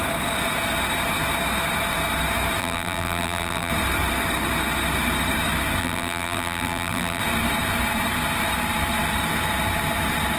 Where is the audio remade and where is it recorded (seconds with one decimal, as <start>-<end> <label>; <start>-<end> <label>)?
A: 0.0-2.6 recorded; 2.6-3.7 remade; 3.7-5.8 recorded; 5.8-7.2 remade; 7.2-10.4 recorded